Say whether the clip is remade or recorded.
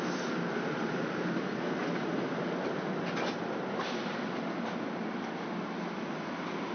recorded